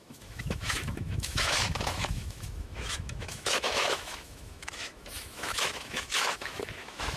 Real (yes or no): no